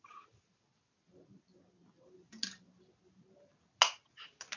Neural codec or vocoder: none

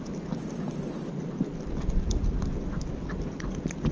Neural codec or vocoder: none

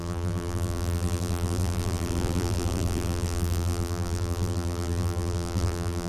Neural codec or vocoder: vocoder, BigVGAN v2